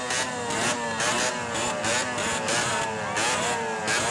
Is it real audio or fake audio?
real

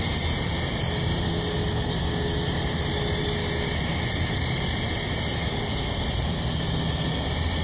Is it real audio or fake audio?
real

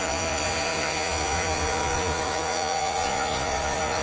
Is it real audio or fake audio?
fake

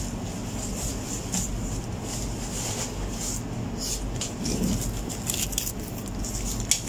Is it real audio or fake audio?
real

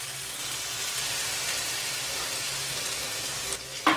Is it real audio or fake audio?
real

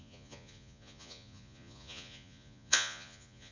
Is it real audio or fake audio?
fake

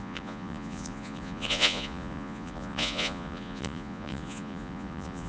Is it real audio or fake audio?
fake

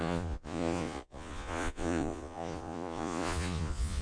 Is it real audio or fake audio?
fake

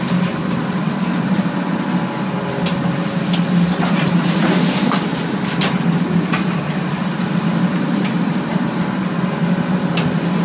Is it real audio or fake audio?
real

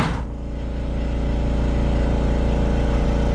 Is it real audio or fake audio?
real